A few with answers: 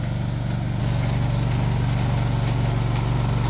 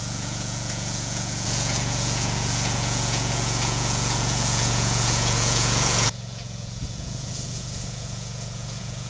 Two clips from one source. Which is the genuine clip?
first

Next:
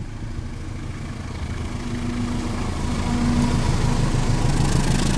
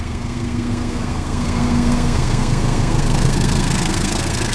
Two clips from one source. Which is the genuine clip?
first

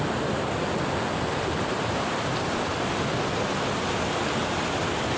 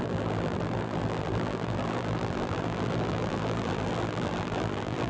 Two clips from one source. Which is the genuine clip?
first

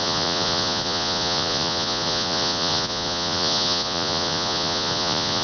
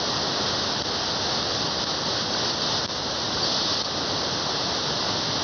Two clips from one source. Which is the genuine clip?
second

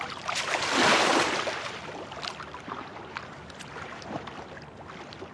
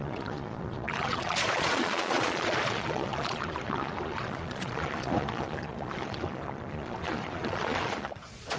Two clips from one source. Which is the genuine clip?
first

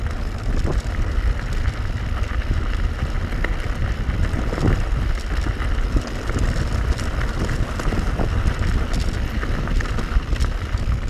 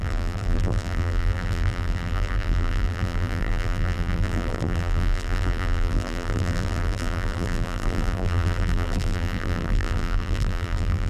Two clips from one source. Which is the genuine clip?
first